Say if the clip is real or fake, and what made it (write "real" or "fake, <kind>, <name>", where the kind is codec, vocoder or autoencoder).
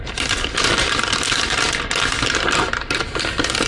real